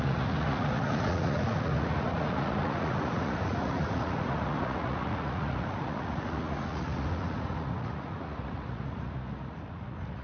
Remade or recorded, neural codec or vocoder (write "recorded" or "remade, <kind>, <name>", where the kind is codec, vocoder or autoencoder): remade, vocoder, Vocos